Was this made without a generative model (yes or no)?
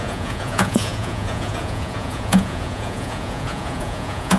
no